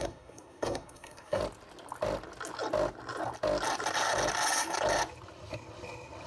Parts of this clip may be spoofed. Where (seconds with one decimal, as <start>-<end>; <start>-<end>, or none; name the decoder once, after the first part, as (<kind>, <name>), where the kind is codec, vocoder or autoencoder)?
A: 0.0-1.4 (codec, SNAC)